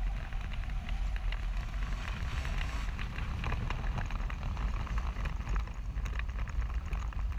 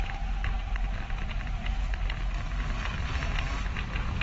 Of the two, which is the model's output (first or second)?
first